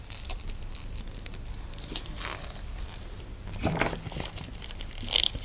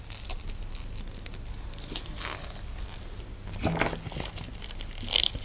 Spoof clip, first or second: first